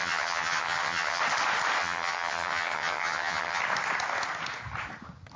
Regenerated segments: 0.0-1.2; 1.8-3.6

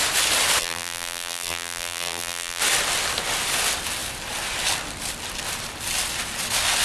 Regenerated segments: 0.6-2.6

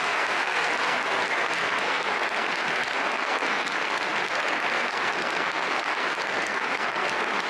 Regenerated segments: 0.0-7.5

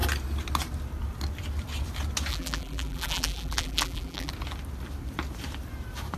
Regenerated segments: 2.3-4.3

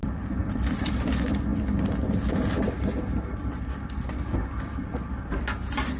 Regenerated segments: none